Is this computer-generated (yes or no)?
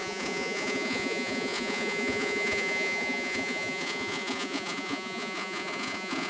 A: yes